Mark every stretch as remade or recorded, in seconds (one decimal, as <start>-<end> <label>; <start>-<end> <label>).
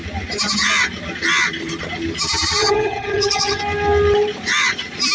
0.0-2.6 recorded; 2.6-3.6 remade; 3.6-5.1 recorded